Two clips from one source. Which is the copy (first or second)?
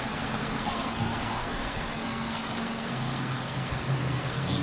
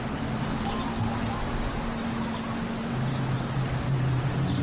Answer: first